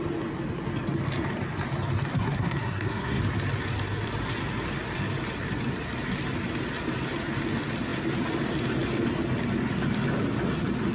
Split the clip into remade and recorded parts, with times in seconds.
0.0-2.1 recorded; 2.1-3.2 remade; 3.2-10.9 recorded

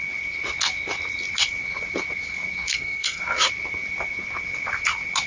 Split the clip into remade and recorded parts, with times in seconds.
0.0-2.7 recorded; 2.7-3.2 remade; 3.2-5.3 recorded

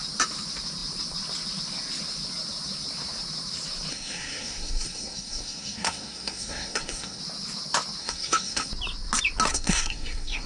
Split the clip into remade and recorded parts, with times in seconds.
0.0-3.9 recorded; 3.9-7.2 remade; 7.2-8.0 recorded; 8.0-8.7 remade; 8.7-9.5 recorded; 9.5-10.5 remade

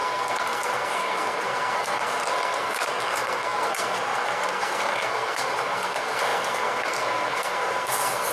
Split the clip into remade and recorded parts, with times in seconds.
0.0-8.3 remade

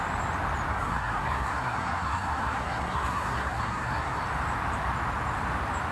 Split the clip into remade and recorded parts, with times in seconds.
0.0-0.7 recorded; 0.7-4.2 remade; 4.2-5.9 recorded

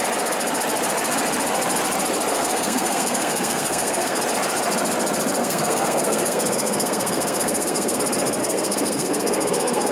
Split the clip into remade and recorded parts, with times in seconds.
0.0-2.3 recorded; 2.3-4.2 remade; 4.2-5.4 recorded; 5.4-8.0 remade; 8.0-8.4 recorded; 8.4-9.9 remade

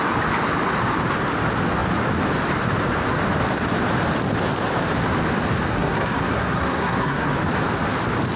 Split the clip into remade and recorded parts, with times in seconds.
0.0-5.7 recorded; 5.7-7.3 remade; 7.3-8.4 recorded